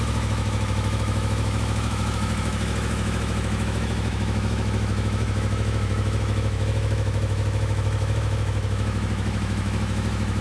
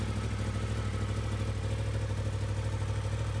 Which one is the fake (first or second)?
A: first